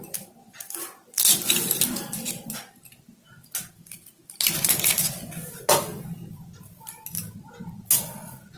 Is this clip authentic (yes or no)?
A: yes